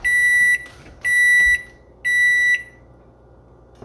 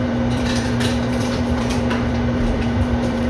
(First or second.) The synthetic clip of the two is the second